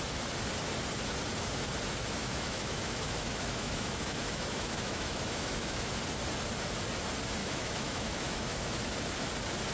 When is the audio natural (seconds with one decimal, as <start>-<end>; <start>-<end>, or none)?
0.0-2.2; 5.9-7.4; 8.8-9.7